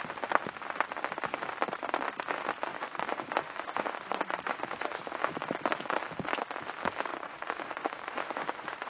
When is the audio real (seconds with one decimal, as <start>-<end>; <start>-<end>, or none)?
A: 0.0-2.7; 5.0-7.1

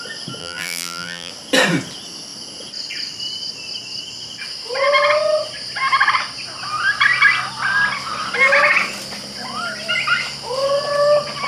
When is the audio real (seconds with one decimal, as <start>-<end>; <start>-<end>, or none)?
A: 0.0-0.4; 1.3-11.5

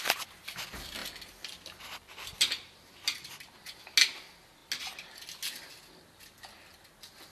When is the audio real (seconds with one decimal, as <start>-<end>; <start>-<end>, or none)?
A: 0.0-7.3

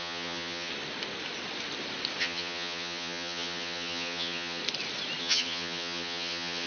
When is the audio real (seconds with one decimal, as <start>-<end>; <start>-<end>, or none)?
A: 0.7-2.2; 4.6-5.2

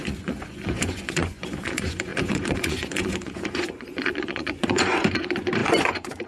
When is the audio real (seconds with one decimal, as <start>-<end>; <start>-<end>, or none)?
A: none